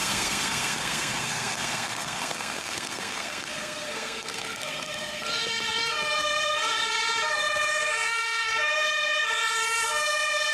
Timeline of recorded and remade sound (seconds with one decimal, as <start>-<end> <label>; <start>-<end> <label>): 0.0-10.5 remade

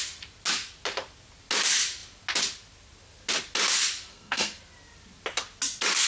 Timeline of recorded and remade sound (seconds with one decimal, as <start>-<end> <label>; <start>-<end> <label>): 0.0-4.1 recorded; 4.1-4.6 remade; 4.6-6.1 recorded

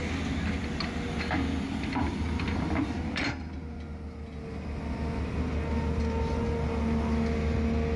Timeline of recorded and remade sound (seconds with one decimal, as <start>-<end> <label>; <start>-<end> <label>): 0.0-8.0 recorded

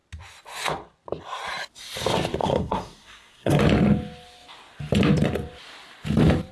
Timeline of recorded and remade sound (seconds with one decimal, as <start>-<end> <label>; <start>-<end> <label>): 0.0-2.4 recorded; 2.4-3.6 remade; 3.6-6.5 recorded

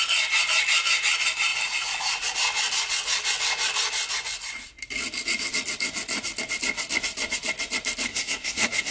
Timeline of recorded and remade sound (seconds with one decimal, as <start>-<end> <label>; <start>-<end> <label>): 0.0-8.1 recorded; 8.1-8.9 remade

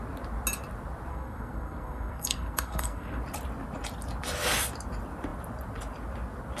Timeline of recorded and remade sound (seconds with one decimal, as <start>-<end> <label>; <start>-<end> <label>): 0.0-1.1 recorded; 1.1-3.2 remade; 3.2-6.6 recorded

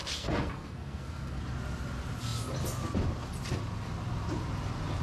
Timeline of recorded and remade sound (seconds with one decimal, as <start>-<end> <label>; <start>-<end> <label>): 0.0-1.4 remade; 1.4-5.0 recorded

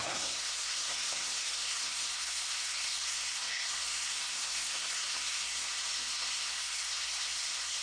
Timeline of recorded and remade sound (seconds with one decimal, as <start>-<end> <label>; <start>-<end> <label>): 0.0-7.8 remade